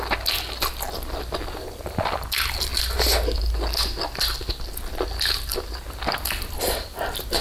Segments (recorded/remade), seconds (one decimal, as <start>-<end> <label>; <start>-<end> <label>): 0.0-7.4 recorded